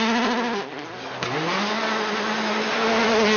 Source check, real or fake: real